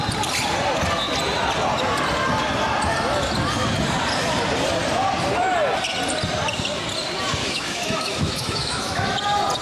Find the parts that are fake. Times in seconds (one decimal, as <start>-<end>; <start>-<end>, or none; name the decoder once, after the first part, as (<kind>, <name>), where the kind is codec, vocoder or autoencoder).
7.4-9.0 (autoencoder, DAC-VAE)